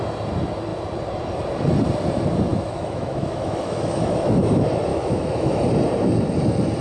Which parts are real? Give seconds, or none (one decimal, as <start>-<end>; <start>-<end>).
0.0-2.5; 4.5-4.9; 5.7-6.8